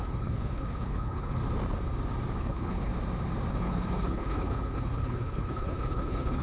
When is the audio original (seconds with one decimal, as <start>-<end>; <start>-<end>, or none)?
1.4-2.4; 2.9-3.5